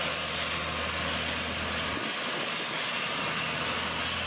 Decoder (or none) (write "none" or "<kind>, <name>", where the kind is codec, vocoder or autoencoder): none